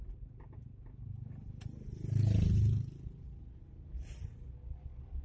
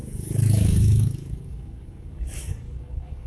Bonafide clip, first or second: first